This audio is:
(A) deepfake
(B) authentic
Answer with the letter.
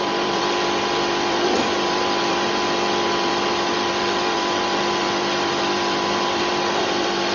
A